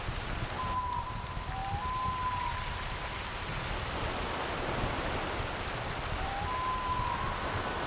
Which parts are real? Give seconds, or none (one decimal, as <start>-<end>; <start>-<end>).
0.0-7.9